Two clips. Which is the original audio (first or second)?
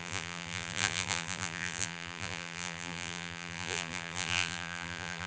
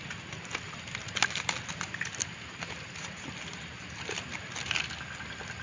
second